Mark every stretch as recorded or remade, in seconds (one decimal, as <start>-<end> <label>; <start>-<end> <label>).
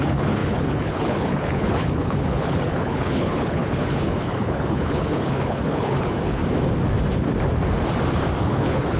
0.0-6.4 remade; 6.4-8.4 recorded; 8.4-9.0 remade